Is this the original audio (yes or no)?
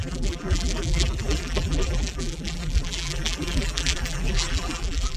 no